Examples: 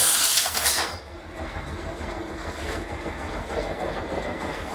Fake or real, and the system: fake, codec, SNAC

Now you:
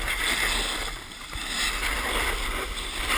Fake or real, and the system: real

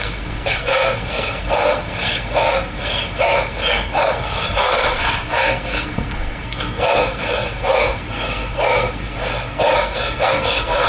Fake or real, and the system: fake, codec, SNAC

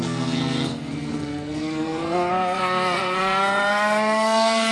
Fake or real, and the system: fake, codec, SNAC